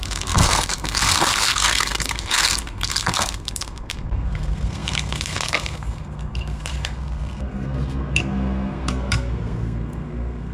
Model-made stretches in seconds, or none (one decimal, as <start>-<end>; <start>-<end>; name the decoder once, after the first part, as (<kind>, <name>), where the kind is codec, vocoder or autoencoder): 0.0-10.5 (codec, SNAC)